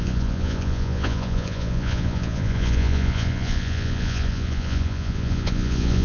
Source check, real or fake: fake